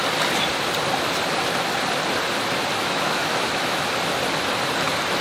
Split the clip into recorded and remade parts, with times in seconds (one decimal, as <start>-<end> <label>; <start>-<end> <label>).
0.0-2.8 recorded; 2.8-3.9 remade; 3.9-5.2 recorded